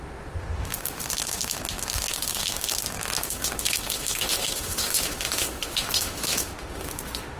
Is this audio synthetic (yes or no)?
yes